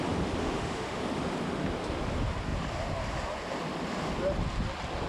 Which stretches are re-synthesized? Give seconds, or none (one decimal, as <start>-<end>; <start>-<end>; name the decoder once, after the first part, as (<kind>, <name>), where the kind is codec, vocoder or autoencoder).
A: 0.4-1.0 (autoencoder, DAC-VAE)